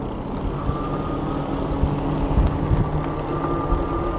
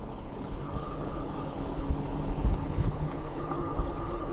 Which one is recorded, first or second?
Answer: first